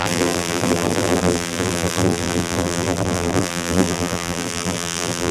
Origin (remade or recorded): remade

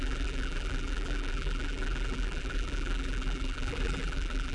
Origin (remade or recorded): remade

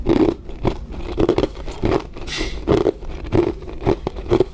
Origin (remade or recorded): recorded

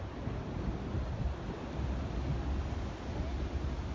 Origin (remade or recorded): recorded